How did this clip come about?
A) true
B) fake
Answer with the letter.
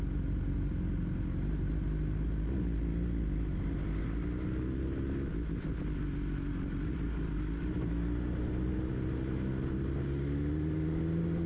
A